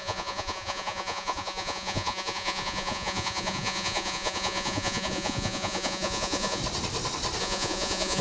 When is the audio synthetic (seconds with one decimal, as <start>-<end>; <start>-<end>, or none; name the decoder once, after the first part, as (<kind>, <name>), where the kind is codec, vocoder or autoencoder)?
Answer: 0.0-6.6 (vocoder, Vocos); 7.4-8.2